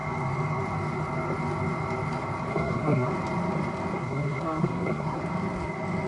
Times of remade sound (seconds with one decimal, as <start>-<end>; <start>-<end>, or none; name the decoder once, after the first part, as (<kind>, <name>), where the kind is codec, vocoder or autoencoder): 2.5-3.1 (codec, SNAC); 4.0-5.2